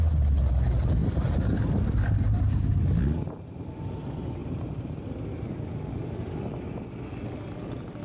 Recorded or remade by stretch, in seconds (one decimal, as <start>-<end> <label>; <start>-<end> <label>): 0.0-1.0 recorded; 1.0-2.8 remade; 2.8-4.4 recorded; 4.4-4.9 remade; 4.9-8.0 recorded